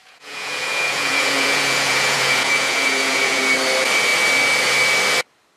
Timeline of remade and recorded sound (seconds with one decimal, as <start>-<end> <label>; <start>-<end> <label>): 0.0-3.4 remade; 3.4-5.6 recorded